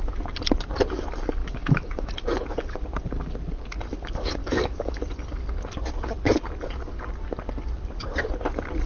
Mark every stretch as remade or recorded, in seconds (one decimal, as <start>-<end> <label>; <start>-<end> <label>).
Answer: 0.0-1.4 recorded; 1.4-2.1 remade; 2.1-4.4 recorded; 4.4-5.1 remade; 5.1-8.9 recorded